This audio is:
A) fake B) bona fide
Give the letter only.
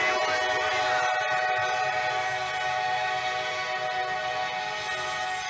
B